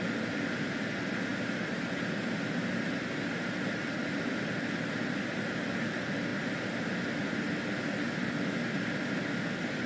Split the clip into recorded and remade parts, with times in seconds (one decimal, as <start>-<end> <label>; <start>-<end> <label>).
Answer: 0.0-9.9 recorded